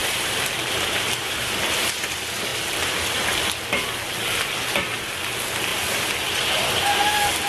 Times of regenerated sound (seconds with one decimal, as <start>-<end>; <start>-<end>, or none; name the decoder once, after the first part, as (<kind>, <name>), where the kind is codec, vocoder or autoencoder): 0.0-1.9 (vocoder, BigVGAN v2)